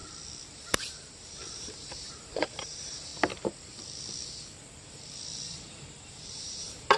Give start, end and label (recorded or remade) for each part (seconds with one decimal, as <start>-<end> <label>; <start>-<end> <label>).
0.0-0.5 recorded; 0.5-3.1 remade; 3.1-5.7 recorded; 5.7-7.0 remade